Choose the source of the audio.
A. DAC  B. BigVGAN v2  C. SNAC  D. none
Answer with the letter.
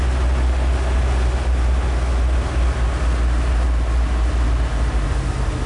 D